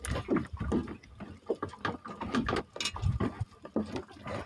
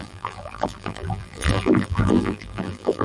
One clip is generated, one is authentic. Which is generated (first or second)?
second